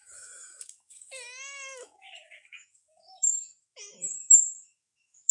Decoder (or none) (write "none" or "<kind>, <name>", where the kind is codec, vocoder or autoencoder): autoencoder, DAC-VAE